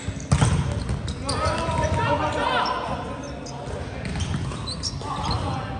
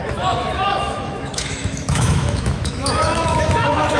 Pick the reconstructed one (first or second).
second